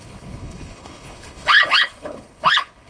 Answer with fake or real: fake